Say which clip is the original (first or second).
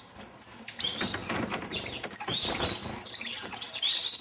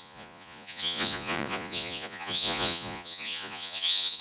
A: first